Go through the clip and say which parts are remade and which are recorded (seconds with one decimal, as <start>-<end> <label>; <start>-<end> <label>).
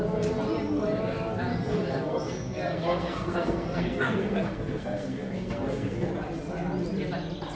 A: 0.0-1.5 recorded; 1.5-6.1 remade; 6.1-7.6 recorded